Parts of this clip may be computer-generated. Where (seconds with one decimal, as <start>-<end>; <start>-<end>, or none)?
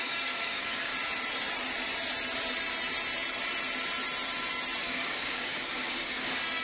0.0-0.9; 4.8-6.6